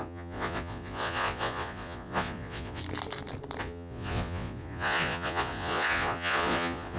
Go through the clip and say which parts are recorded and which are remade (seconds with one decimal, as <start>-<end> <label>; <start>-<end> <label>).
0.0-2.8 remade; 2.8-3.6 recorded; 3.6-7.0 remade